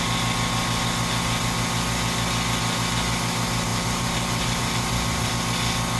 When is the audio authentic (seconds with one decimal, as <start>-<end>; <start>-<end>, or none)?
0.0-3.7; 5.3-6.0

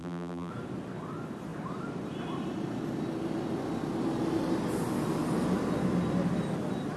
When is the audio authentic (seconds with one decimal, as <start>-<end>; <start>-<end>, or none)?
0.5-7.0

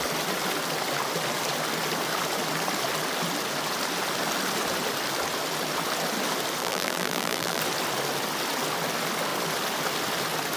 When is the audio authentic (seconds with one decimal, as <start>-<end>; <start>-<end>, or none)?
0.0-6.6; 7.6-10.6

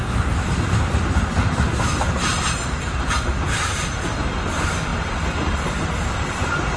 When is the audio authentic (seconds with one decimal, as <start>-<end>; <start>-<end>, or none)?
0.0-2.3; 3.0-4.9